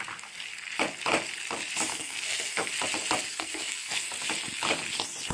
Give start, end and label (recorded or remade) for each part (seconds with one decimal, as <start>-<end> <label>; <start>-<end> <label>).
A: 0.0-1.9 recorded; 1.9-2.7 remade; 2.7-3.3 recorded; 3.3-4.1 remade; 4.1-5.3 recorded